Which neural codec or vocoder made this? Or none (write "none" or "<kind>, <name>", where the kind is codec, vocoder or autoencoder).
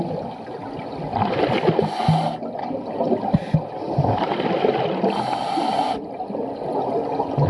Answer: none